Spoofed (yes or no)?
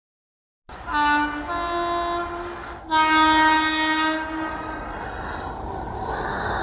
no